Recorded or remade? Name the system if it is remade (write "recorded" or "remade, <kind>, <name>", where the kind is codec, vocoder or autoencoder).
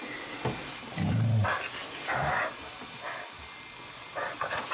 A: recorded